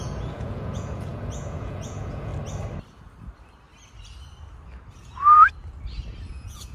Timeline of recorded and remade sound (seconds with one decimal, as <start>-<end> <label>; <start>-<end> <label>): 0.0-2.3 remade; 2.3-6.3 recorded; 6.3-6.7 remade